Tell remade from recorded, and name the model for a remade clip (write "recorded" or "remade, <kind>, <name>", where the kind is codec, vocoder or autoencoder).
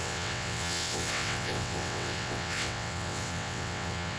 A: remade, vocoder, WaveNeXt